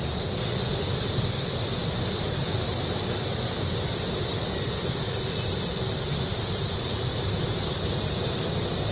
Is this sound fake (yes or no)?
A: no